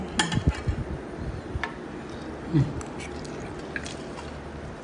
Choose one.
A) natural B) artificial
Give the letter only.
A